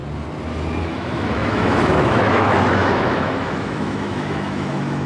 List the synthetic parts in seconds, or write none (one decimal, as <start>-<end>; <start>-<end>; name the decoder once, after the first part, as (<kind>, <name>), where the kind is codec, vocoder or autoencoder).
0.8-5.1 (autoencoder, DAC-VAE)